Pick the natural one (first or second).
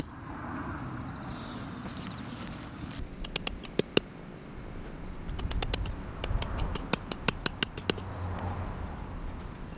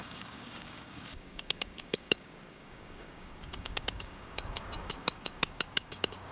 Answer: first